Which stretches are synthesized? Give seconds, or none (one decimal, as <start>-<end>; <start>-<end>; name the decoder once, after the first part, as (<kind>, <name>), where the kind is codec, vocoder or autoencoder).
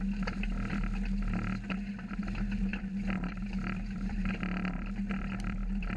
2.7-6.0 (vocoder, BigVGAN v2)